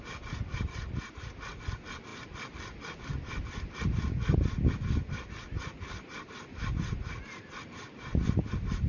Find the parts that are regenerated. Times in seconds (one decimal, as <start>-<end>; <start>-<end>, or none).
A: 0.5-1.3; 6.5-8.5